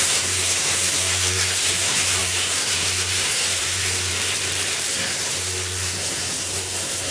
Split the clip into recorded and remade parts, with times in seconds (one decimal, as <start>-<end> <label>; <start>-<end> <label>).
0.0-4.1 remade; 4.1-4.9 recorded; 4.9-7.1 remade

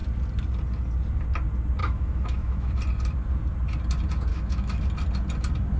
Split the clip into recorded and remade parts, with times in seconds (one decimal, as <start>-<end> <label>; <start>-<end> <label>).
0.0-1.8 recorded; 1.8-2.8 remade; 2.8-4.3 recorded; 4.3-4.8 remade; 4.8-5.8 recorded

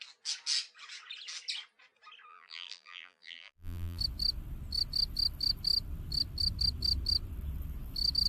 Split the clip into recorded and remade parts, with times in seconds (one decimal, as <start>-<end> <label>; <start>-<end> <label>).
0.0-2.3 recorded; 2.3-4.0 remade; 4.0-8.3 recorded

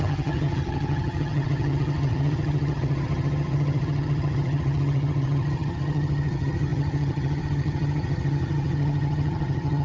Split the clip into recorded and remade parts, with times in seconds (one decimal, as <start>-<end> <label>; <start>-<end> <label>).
0.0-9.8 remade

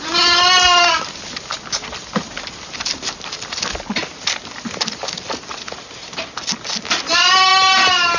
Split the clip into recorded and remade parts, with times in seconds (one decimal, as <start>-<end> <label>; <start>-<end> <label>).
0.0-8.2 recorded

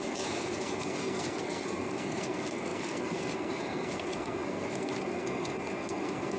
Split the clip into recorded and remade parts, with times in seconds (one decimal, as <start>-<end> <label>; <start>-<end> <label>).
0.0-6.4 remade